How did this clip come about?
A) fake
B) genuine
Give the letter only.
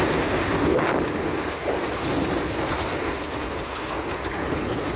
B